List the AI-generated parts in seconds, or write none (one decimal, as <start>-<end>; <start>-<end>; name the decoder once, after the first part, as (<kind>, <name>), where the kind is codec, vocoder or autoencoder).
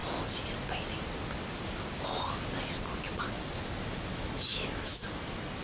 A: 4.1-5.6 (autoencoder, DAC-VAE)